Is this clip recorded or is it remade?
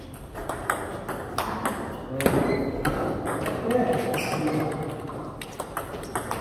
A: recorded